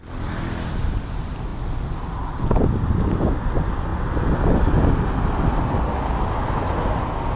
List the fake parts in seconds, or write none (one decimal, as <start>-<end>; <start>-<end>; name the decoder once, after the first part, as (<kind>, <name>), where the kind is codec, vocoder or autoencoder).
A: none